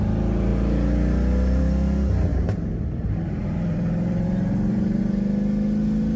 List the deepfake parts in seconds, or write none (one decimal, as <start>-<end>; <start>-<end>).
2.3-5.0